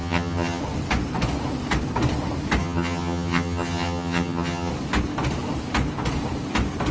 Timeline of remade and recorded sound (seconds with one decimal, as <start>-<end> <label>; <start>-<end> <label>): 0.0-0.6 remade; 0.6-2.6 recorded; 2.6-4.7 remade; 4.7-6.9 recorded